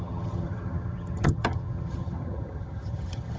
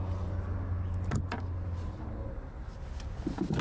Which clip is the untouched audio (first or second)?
second